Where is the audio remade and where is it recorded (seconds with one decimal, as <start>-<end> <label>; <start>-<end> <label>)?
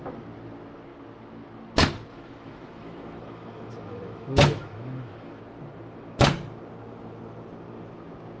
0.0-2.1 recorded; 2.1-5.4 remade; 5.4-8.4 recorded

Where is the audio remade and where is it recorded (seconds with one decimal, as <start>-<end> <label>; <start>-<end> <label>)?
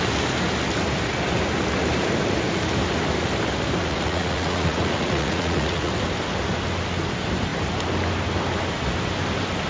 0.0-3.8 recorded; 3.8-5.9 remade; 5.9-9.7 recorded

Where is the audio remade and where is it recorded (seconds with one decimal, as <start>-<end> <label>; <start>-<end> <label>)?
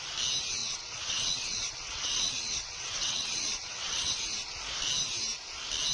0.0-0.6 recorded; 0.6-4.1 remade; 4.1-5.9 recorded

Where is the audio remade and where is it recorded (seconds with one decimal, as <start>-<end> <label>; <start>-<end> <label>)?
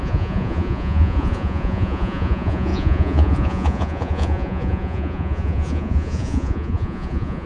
0.0-7.5 remade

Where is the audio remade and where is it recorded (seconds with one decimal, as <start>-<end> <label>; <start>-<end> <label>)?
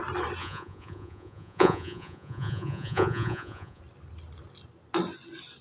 0.0-0.4 recorded; 0.4-3.8 remade; 3.8-5.6 recorded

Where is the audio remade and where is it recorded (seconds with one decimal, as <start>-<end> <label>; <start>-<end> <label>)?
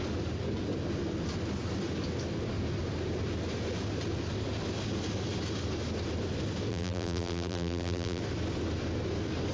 0.0-6.7 recorded; 6.7-8.2 remade; 8.2-9.5 recorded